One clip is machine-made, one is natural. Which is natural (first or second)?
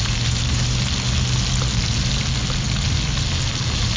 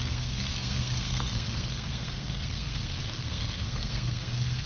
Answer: first